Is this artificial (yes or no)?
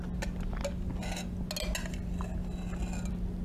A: no